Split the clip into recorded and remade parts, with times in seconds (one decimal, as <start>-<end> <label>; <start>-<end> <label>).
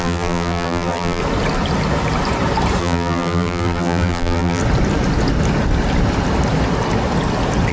0.0-1.2 remade; 1.2-2.8 recorded; 2.8-4.6 remade; 4.6-7.7 recorded